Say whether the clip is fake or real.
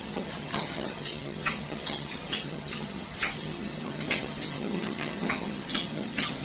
fake